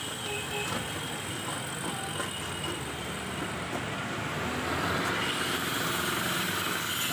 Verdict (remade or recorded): recorded